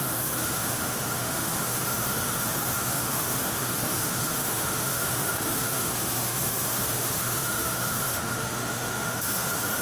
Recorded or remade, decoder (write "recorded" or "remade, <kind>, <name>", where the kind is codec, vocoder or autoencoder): remade, autoencoder, DAC-VAE